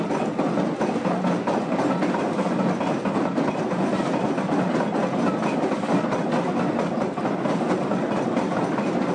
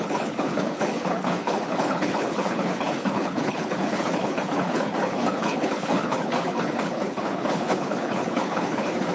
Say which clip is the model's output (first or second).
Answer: second